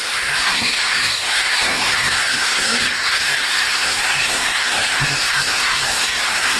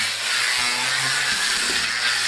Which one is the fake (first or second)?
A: first